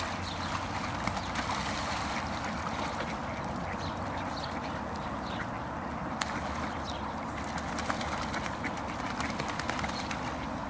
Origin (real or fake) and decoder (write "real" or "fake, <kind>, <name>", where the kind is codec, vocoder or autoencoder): real